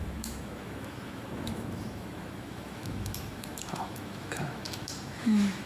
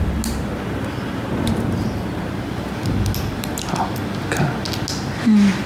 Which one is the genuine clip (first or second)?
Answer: second